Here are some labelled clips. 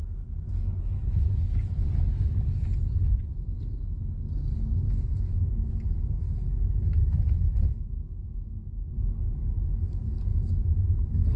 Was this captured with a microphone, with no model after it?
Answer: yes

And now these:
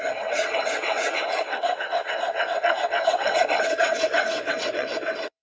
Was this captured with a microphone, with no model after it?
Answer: no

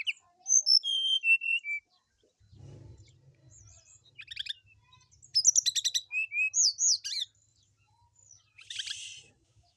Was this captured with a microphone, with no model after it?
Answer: yes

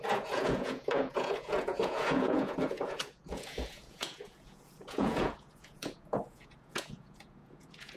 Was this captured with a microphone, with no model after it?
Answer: no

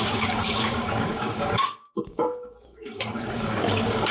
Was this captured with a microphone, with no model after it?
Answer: no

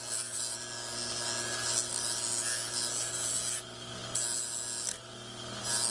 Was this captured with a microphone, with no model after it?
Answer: yes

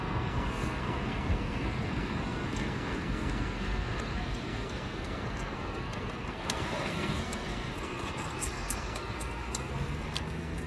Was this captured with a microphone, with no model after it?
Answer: no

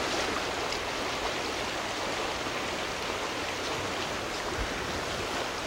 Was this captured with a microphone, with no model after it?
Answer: yes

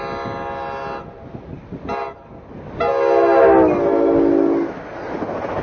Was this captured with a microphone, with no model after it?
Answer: yes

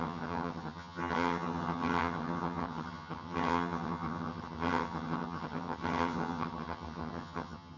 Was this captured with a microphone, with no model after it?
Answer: no